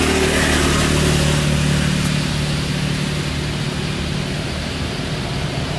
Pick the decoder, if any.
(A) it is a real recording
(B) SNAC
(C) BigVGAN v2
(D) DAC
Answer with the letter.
A